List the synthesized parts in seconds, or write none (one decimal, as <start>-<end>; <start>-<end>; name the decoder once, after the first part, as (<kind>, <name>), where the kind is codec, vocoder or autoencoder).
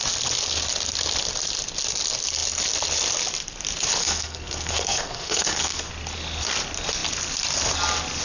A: 4.0-5.9 (codec, SNAC)